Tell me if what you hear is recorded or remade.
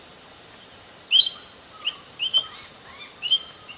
remade